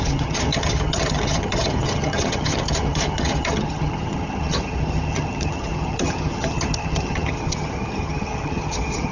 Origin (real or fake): fake